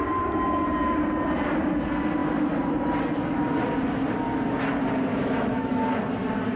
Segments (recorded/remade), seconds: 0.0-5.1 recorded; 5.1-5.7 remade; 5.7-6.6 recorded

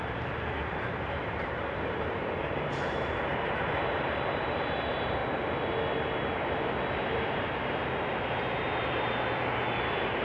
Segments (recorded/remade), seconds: 0.0-5.2 remade; 5.2-6.9 recorded; 6.9-10.2 remade

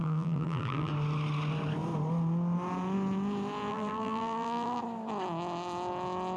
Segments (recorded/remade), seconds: 0.0-0.9 remade; 0.9-3.7 recorded; 3.7-4.8 remade; 4.8-6.4 recorded

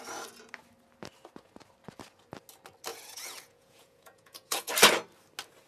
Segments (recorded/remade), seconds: 0.0-2.9 recorded; 2.9-4.7 remade; 4.7-5.7 recorded